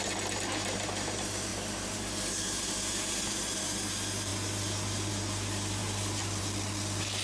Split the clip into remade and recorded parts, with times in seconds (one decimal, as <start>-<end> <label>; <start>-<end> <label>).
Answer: 0.0-7.2 recorded